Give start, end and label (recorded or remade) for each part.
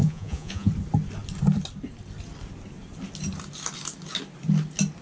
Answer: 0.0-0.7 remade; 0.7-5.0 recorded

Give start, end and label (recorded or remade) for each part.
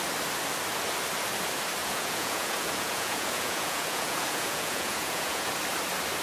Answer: 0.0-1.8 recorded; 1.8-5.5 remade; 5.5-6.2 recorded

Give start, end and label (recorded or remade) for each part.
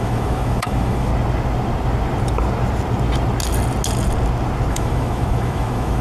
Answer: 0.0-1.1 remade; 1.1-4.7 recorded; 4.7-6.0 remade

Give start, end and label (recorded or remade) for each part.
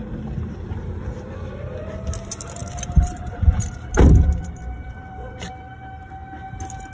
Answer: 0.0-0.7 remade; 0.7-2.6 recorded; 2.6-5.5 remade; 5.5-6.9 recorded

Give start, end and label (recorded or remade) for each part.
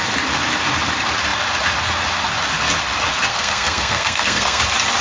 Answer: 0.0-3.3 recorded; 3.3-4.6 remade; 4.6-5.0 recorded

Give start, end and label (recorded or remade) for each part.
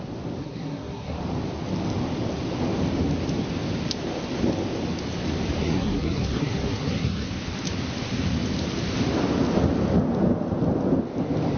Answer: 0.0-0.4 recorded; 0.4-1.2 remade; 1.2-5.6 recorded; 5.6-7.3 remade; 7.3-11.6 recorded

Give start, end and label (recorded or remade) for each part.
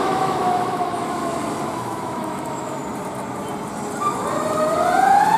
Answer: 0.0-1.2 remade; 1.2-1.7 recorded; 1.7-2.8 remade; 2.8-5.4 recorded